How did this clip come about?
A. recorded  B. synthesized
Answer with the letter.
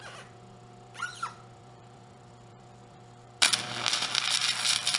B